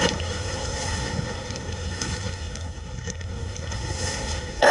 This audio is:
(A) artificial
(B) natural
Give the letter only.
A